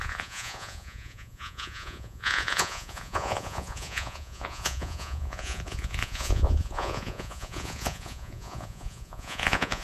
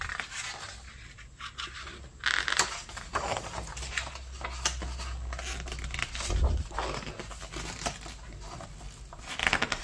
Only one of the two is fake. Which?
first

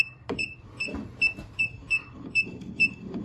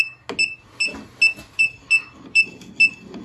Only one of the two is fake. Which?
first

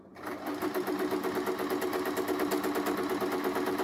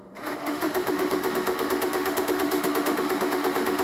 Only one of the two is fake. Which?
second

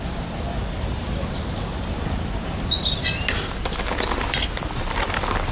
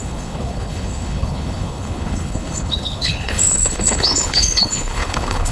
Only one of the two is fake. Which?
second